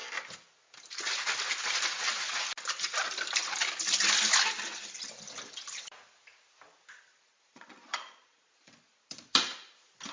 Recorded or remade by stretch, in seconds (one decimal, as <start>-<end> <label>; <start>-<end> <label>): 0.0-7.1 recorded; 7.1-9.3 remade; 9.3-10.1 recorded